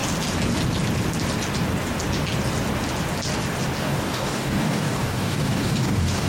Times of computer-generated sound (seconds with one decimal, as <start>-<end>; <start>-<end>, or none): 3.8-6.3